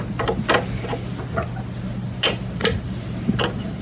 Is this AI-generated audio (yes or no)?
no